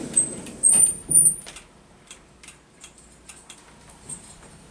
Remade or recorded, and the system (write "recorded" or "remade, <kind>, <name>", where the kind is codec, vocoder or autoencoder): remade, vocoder, BigVGAN v2